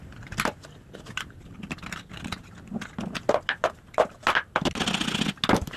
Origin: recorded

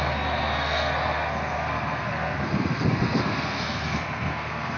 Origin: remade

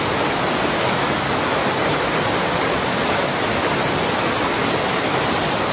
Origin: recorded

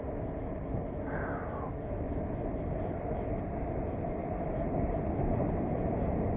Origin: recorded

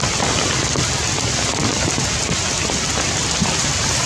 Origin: recorded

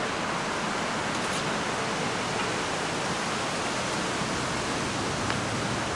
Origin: recorded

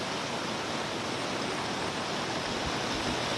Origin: recorded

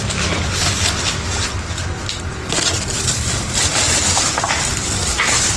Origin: recorded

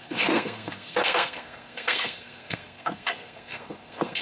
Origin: remade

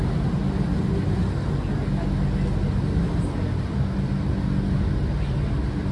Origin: recorded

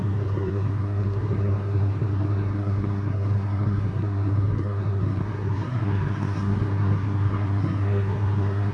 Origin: remade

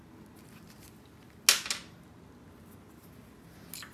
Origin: recorded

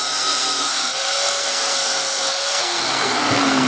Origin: remade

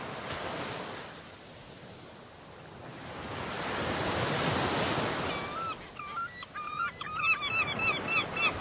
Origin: recorded